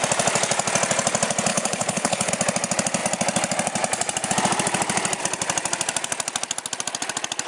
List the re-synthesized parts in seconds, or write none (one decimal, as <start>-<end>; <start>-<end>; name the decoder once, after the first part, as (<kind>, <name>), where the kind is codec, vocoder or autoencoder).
1.5-2.3 (codec, HILCodec)